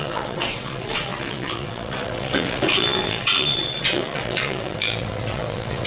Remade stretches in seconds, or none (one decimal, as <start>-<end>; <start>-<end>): 0.0-5.9